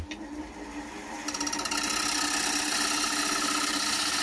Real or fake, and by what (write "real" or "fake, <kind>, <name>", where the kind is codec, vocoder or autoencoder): real